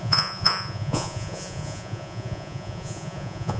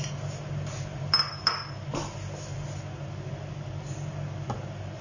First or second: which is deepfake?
first